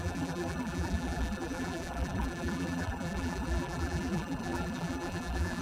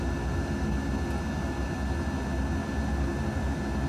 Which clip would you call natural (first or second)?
second